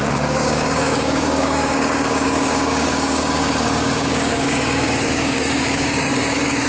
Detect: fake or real fake